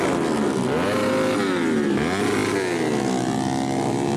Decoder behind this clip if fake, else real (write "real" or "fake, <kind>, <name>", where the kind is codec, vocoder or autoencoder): real